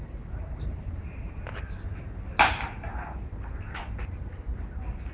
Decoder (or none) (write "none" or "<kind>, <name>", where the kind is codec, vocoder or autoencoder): none